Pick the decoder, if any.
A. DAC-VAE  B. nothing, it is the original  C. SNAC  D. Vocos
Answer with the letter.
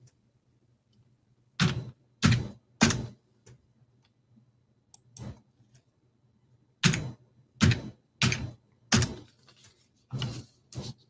B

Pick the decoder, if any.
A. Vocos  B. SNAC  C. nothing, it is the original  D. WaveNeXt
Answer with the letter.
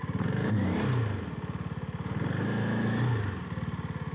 C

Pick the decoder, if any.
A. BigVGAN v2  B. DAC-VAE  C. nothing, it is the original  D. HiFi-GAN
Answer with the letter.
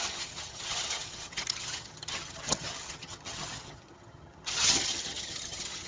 D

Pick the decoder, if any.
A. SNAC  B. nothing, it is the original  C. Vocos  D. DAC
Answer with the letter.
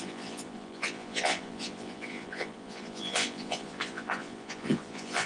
C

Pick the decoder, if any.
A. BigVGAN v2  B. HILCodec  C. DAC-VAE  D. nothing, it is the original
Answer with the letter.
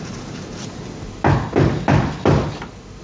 D